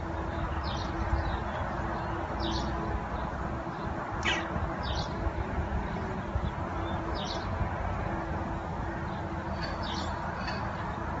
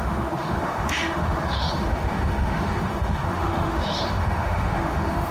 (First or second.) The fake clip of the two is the second